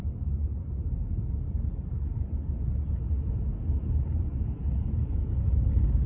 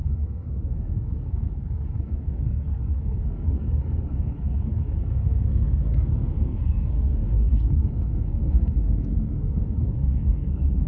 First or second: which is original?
first